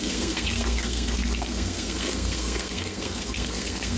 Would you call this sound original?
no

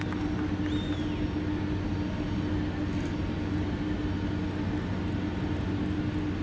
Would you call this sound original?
yes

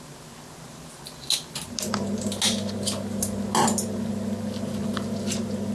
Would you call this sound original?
yes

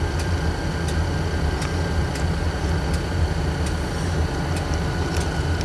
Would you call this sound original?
yes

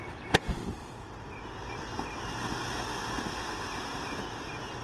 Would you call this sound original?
yes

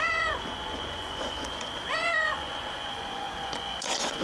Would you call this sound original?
no